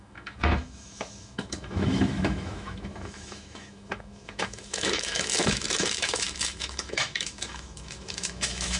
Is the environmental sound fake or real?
fake